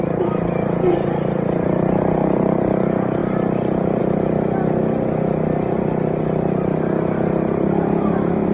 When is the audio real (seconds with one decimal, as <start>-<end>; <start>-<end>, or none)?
0.0-8.5